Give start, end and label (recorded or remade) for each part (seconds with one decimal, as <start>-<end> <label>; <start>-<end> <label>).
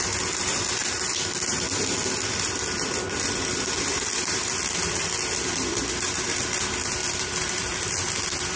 0.0-8.6 remade